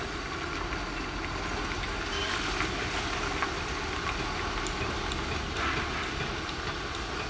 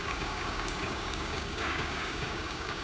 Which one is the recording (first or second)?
first